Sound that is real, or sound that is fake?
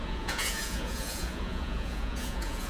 fake